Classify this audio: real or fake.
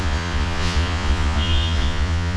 fake